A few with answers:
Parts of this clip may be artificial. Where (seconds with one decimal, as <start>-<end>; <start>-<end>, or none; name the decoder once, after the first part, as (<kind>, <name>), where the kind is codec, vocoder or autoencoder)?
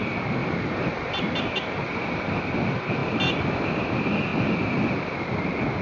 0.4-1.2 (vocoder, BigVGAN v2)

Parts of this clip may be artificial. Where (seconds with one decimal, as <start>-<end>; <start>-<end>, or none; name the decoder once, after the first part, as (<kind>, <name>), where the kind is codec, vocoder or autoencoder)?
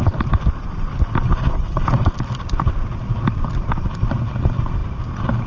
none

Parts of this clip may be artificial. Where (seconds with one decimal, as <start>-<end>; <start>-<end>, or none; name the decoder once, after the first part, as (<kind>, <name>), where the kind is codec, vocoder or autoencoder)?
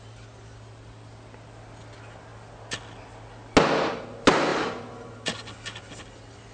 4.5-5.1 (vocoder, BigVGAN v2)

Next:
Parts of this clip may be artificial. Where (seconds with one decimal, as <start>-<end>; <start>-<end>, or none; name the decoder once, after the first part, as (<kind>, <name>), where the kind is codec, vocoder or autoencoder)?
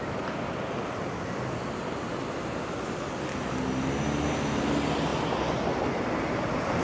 none